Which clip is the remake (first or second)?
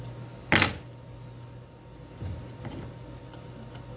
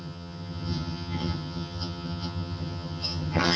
second